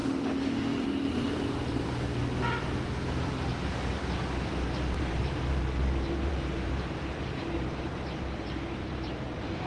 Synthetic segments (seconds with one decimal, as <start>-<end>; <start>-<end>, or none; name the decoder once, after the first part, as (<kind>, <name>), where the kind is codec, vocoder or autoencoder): 5.0-9.7 (vocoder, BigVGAN v2)